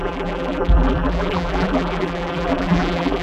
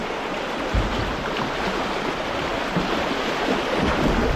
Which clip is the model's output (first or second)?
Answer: first